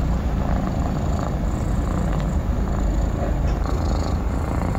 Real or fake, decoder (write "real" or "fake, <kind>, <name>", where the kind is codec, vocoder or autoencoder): real